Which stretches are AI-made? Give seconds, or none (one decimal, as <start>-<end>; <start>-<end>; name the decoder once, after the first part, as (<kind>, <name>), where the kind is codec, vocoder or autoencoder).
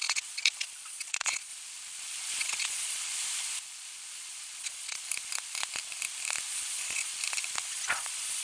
0.0-1.5 (vocoder, Vocos); 2.4-3.1; 4.6-5.0; 6.5-7.1; 7.7-8.4